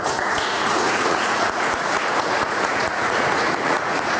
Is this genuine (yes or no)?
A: no